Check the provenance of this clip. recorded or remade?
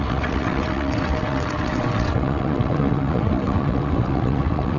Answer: remade